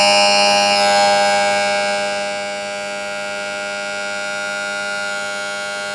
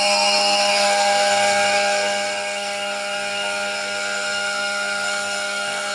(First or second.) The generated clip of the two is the second